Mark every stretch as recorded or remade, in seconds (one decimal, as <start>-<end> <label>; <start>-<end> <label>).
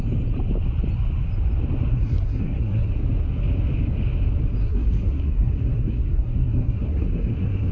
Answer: 0.0-1.9 recorded; 1.9-2.9 remade; 2.9-4.6 recorded; 4.6-7.7 remade